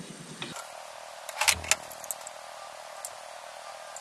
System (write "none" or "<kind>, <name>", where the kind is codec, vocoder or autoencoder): none